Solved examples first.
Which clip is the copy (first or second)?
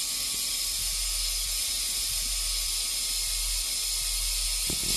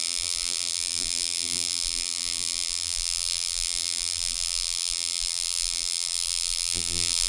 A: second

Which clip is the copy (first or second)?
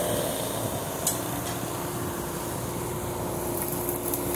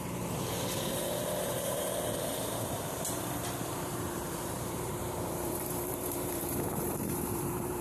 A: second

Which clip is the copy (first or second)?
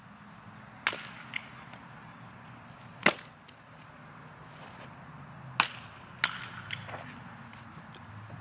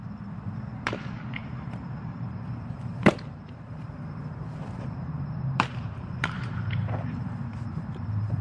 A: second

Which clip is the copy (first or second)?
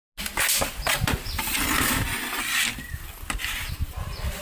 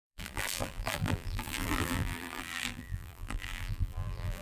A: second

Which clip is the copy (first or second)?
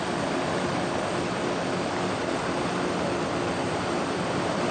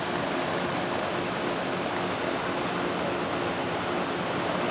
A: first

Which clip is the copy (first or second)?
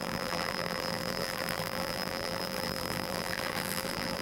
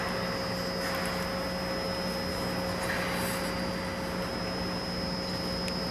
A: first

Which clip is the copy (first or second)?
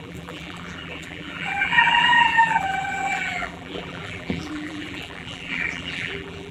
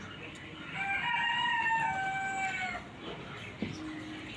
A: first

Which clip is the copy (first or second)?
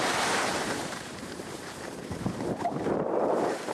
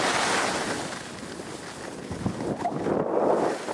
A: first